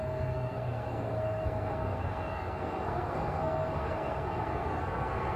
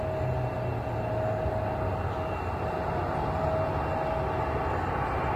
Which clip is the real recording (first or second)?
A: second